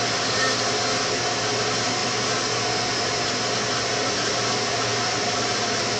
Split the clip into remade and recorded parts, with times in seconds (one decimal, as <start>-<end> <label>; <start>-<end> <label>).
0.0-6.0 recorded